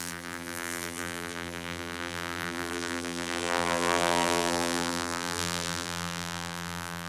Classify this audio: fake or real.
fake